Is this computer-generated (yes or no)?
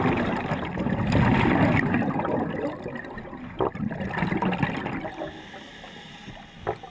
no